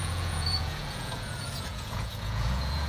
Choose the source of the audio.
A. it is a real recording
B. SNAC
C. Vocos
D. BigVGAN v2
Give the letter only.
C